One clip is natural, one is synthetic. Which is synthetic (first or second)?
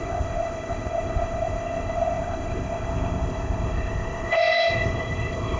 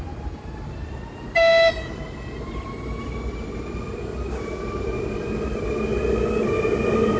first